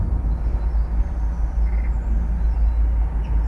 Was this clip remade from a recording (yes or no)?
no